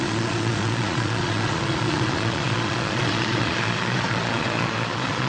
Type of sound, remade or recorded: remade